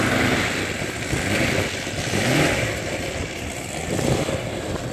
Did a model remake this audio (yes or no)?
no